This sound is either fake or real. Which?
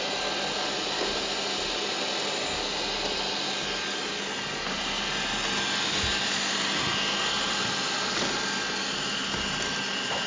real